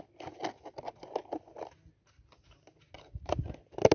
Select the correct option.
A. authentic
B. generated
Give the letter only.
A